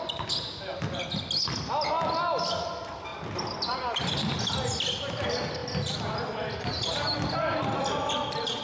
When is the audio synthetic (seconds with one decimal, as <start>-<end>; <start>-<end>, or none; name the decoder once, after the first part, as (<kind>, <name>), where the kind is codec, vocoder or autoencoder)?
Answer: none